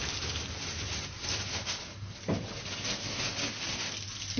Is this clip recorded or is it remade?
recorded